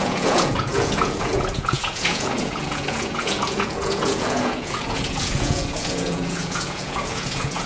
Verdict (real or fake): fake